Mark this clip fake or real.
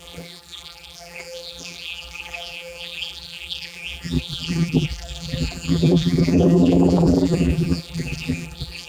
fake